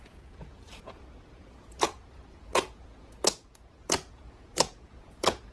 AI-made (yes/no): yes